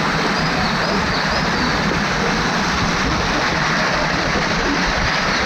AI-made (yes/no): no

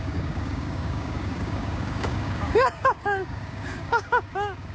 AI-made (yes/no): yes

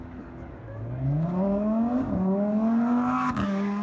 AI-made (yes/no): yes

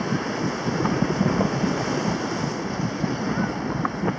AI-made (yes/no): no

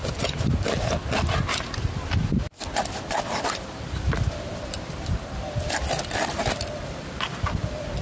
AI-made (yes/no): no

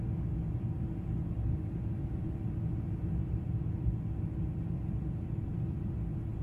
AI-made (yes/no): no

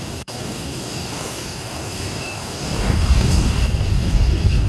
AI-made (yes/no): yes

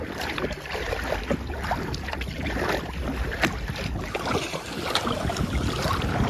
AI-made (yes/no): no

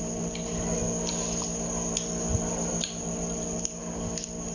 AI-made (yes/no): no